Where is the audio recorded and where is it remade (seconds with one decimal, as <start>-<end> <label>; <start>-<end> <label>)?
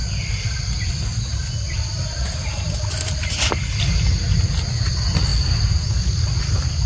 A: 0.0-6.9 recorded